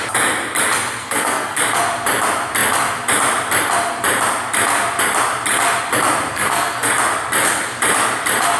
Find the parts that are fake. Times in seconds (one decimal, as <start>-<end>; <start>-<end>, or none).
1.0-1.6; 6.3-6.9